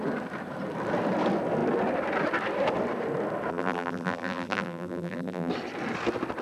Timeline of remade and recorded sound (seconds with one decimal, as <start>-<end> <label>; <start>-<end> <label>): 0.0-3.5 recorded; 3.5-5.5 remade; 5.5-6.4 recorded